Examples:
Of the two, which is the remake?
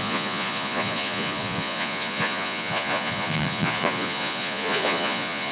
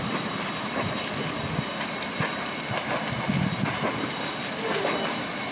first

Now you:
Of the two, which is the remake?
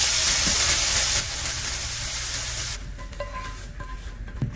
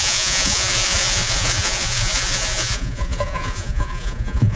second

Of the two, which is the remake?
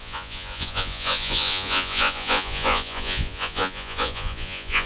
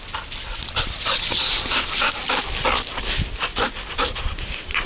first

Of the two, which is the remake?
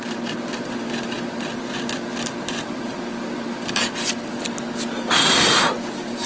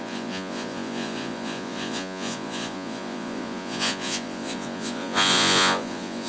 second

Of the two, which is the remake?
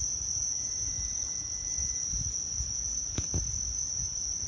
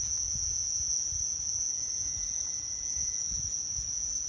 second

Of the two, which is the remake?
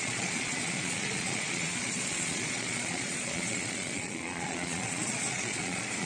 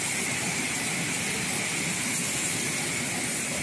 first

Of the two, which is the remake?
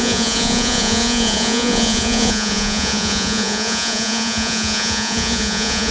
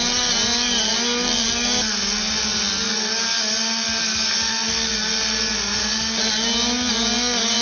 first